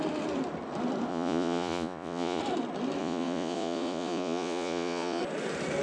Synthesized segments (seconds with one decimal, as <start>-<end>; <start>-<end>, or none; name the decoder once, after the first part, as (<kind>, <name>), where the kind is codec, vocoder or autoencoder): 1.1-2.4 (vocoder, Vocos); 3.0-5.2

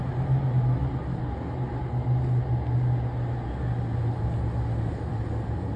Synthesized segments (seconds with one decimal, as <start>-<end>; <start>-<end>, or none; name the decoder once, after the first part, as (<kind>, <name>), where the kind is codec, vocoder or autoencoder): none

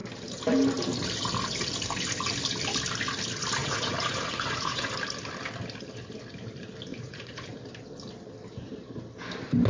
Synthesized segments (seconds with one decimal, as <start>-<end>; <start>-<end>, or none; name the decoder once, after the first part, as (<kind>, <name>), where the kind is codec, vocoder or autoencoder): 3.6-4.9 (vocoder, Vocos); 6.9-7.6

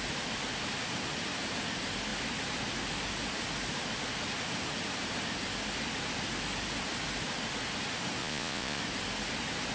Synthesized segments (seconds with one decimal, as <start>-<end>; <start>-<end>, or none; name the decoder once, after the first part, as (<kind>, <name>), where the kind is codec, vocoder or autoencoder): 8.2-8.8 (vocoder, Vocos)

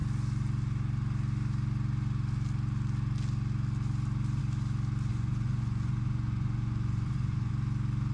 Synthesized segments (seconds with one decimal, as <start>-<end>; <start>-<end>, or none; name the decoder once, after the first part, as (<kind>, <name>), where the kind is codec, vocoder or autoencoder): 5.1-7.5 (vocoder, Vocos)

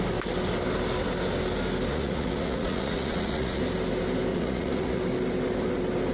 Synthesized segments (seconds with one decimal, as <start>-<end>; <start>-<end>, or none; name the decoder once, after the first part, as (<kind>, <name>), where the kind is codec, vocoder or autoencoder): 1.9-3.6 (vocoder, Vocos); 4.3-5.0

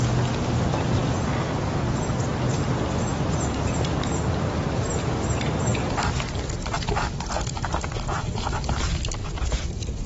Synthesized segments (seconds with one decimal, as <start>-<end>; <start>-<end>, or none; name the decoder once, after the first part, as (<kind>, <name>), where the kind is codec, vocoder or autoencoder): 9.2-9.7 (vocoder, Vocos)